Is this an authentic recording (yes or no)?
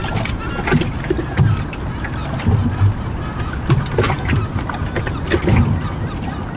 yes